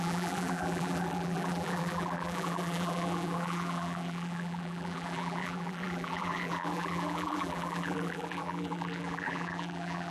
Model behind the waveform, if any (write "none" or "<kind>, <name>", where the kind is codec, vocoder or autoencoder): vocoder, BigVGAN v2